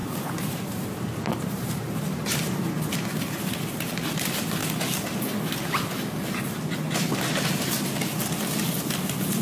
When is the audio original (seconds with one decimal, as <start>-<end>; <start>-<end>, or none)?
2.8-9.4